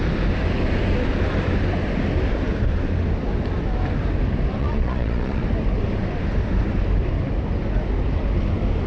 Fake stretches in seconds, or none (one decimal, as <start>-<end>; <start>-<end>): 4.6-5.4